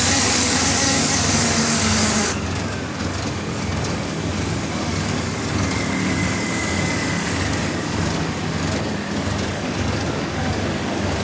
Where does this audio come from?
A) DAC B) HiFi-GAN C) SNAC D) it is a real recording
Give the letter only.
A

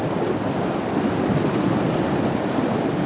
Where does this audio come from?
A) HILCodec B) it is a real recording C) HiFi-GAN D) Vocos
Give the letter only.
B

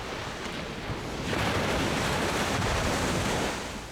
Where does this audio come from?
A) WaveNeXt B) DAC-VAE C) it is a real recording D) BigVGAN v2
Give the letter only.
C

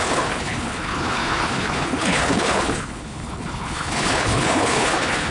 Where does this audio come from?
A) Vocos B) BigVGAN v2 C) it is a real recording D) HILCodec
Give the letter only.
D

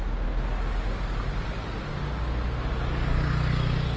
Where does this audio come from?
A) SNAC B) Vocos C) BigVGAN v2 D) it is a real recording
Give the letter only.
D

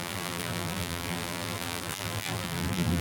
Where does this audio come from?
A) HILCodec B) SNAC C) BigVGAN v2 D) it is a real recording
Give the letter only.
C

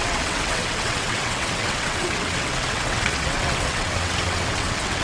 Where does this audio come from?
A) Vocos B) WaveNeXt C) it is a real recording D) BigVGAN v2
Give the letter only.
B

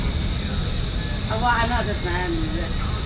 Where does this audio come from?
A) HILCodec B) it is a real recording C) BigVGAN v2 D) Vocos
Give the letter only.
B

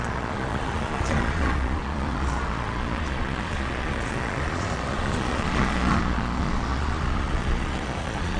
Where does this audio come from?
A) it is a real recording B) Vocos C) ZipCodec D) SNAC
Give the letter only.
B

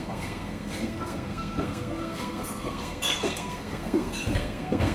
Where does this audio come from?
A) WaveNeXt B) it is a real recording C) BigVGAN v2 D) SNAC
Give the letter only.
D